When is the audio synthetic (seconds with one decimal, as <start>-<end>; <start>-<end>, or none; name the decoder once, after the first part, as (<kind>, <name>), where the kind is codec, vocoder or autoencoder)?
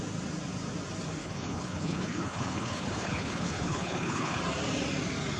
1.2-4.4 (codec, HILCodec)